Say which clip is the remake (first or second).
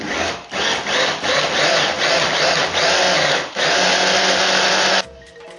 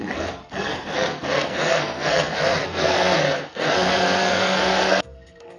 second